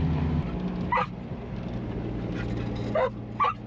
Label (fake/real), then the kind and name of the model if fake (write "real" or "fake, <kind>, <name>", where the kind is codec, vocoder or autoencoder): real